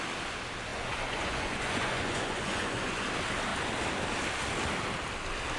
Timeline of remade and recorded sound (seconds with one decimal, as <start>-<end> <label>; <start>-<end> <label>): 0.0-0.7 recorded; 0.7-3.1 remade; 3.1-5.6 recorded